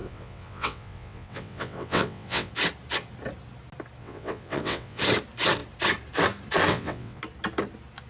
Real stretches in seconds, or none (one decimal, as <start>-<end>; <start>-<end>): 2.5-4.0; 5.0-6.7; 7.2-8.1